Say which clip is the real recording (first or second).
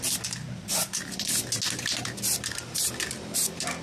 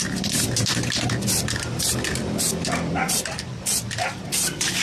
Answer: first